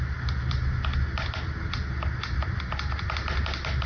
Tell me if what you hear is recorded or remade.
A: recorded